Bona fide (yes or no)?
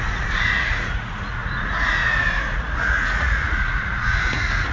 no